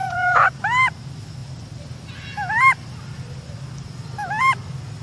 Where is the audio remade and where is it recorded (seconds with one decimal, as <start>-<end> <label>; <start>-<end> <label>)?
0.0-0.5 remade; 0.5-5.0 recorded